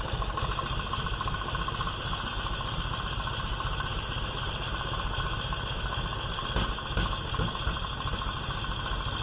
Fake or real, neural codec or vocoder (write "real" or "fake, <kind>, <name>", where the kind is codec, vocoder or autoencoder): real